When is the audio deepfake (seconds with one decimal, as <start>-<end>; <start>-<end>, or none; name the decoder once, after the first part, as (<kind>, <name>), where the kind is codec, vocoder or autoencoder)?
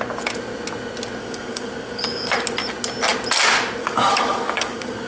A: 1.2-2.3 (codec, DAC); 3.8-5.1